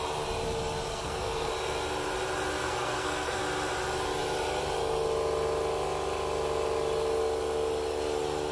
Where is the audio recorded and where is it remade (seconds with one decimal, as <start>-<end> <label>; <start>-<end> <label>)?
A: 0.0-0.9 recorded; 0.9-1.5 remade; 1.5-2.6 recorded; 2.6-3.4 remade; 3.4-8.5 recorded